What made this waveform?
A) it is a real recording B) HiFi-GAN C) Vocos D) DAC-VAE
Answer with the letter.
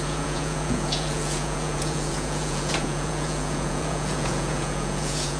C